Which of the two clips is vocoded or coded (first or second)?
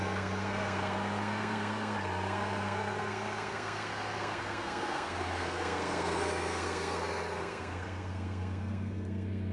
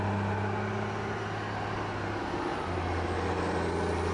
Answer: first